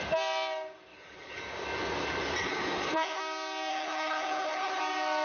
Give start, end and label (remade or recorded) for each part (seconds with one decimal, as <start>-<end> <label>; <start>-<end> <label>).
0.0-0.9 recorded; 0.9-1.4 remade; 1.4-2.4 recorded; 2.4-3.2 remade; 3.2-3.7 recorded; 3.7-4.8 remade; 4.8-5.2 recorded